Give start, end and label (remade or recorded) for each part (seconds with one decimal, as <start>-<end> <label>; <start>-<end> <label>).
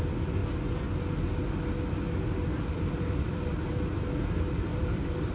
0.0-2.5 recorded; 2.5-3.7 remade; 3.7-4.7 recorded; 4.7-5.3 remade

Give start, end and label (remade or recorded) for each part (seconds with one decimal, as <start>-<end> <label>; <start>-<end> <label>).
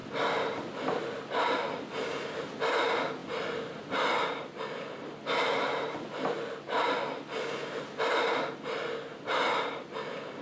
0.0-10.4 recorded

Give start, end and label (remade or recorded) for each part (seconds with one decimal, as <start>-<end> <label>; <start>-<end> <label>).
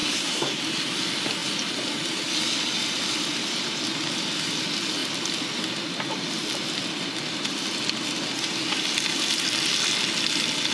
0.0-0.6 remade; 0.6-10.7 recorded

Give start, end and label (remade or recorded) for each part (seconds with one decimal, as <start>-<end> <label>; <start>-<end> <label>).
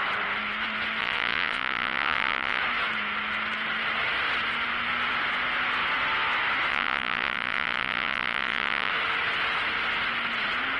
0.0-1.0 recorded; 1.0-2.6 remade; 2.6-6.7 recorded; 6.7-8.9 remade; 8.9-10.8 recorded